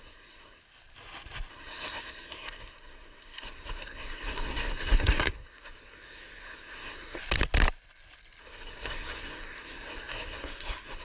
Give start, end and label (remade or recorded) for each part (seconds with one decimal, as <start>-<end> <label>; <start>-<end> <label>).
0.0-0.6 remade; 0.6-1.5 recorded; 1.5-7.2 remade; 7.2-8.4 recorded; 8.4-11.0 remade